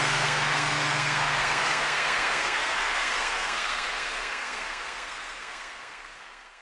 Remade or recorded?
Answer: remade